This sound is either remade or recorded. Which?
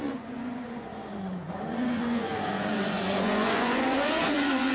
remade